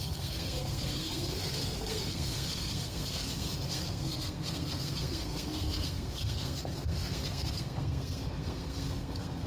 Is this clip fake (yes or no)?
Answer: yes